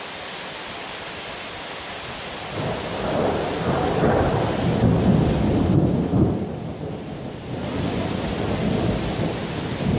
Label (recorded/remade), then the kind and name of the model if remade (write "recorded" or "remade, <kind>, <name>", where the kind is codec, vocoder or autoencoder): recorded